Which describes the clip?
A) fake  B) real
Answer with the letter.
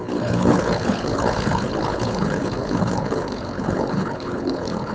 A